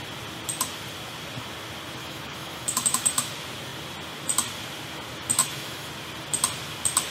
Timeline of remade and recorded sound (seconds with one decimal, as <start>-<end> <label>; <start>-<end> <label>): 0.0-2.0 recorded; 2.0-3.3 remade; 3.3-5.4 recorded; 5.4-5.9 remade; 5.9-7.1 recorded